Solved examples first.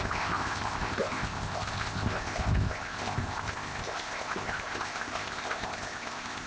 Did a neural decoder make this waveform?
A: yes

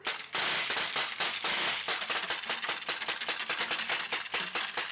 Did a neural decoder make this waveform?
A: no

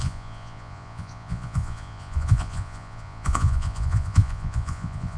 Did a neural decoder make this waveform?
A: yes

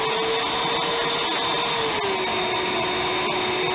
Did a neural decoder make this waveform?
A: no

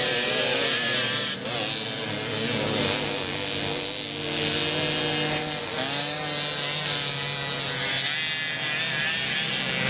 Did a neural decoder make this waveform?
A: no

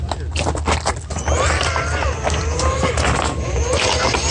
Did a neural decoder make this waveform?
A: no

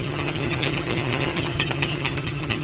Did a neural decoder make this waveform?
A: yes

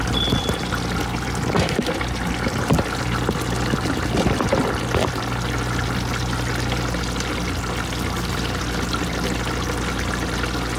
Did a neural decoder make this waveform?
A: no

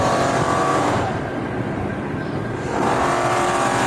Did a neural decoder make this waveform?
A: yes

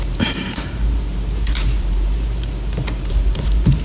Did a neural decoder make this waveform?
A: yes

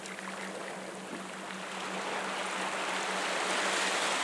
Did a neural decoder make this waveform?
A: no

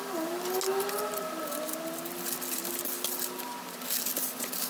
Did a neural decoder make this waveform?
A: no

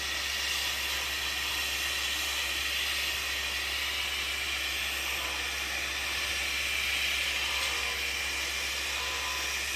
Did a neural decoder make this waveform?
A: no